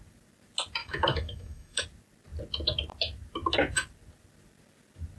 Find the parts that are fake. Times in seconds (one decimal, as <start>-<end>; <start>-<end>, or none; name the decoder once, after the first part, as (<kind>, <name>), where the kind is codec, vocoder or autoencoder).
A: 0.8-1.8 (autoencoder, DAC-VAE)